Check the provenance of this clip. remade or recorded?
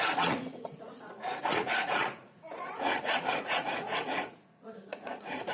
remade